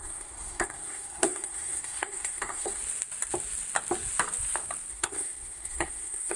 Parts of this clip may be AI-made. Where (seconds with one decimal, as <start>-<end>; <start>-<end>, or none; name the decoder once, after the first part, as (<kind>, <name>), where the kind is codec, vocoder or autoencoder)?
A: 0.0-2.8 (codec, SNAC); 4.9-6.4

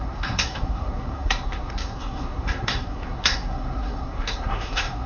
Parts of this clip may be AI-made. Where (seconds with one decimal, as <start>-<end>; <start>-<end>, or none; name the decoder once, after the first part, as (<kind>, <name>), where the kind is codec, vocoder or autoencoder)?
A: 0.0-5.1 (codec, SNAC)

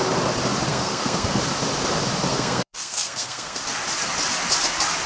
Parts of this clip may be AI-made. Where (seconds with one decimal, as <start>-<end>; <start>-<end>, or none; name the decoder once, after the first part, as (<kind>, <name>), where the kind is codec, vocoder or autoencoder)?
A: 0.7-1.4 (codec, SNAC); 2.3-3.6